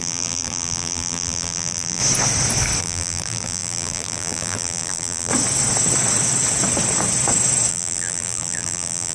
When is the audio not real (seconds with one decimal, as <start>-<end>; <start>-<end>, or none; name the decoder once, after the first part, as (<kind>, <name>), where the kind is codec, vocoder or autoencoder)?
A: 0.0-2.0 (vocoder, BigVGAN v2); 2.8-5.3; 7.7-9.1